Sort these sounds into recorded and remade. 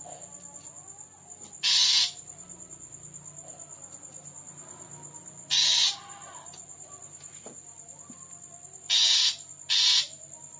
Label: recorded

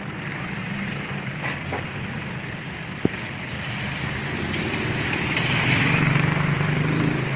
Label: remade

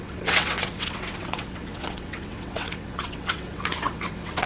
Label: remade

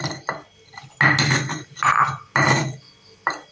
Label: recorded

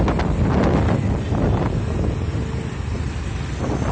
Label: recorded